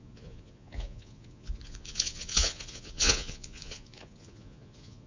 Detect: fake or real fake